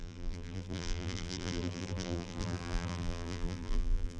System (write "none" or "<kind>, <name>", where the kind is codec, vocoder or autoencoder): vocoder, BigVGAN v2